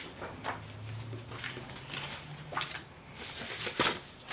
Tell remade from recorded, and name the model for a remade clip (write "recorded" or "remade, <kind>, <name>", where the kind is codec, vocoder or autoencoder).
recorded